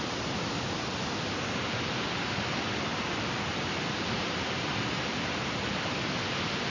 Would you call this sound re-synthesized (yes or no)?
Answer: no